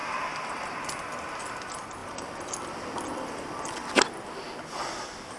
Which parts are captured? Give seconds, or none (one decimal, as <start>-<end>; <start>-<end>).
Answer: 0.0-2.0; 4.2-5.4